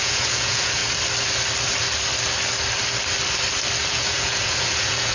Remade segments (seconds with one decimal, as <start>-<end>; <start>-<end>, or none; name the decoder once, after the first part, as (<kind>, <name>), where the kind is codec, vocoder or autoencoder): 0.0-0.8 (vocoder, Vocos); 3.9-5.1